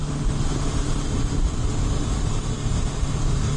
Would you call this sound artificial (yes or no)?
no